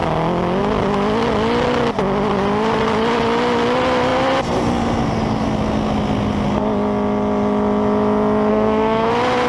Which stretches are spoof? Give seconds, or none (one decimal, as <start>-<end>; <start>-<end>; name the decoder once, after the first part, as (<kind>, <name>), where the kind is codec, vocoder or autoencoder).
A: 8.5-9.1 (codec, SNAC)